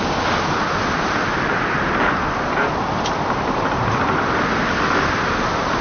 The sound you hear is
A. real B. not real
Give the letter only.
A